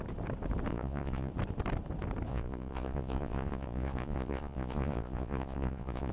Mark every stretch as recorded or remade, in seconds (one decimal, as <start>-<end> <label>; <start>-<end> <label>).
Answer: 0.0-0.7 recorded; 0.7-1.3 remade; 1.3-2.3 recorded; 2.3-6.1 remade